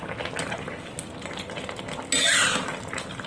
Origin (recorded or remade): recorded